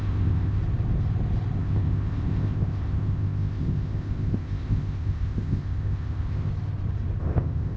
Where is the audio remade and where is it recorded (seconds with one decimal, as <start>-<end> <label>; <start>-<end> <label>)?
0.0-0.6 remade; 0.6-1.6 recorded; 1.6-6.5 remade; 6.5-7.2 recorded; 7.2-7.8 remade